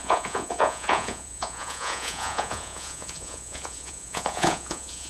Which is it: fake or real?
fake